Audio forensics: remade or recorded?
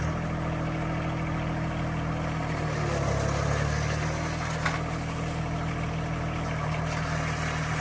recorded